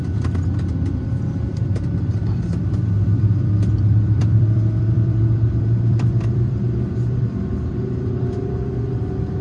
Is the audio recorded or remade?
remade